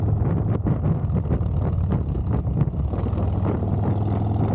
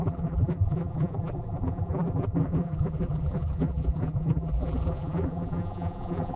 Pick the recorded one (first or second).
first